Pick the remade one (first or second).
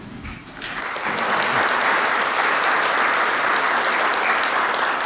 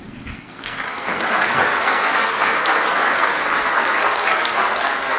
second